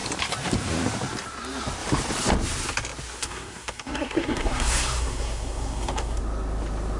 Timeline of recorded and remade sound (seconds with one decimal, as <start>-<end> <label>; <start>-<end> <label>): 0.0-3.2 recorded; 3.2-6.2 remade; 6.2-7.0 recorded